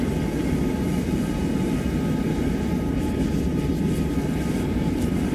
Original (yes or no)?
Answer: yes